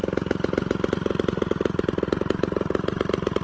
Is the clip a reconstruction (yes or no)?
no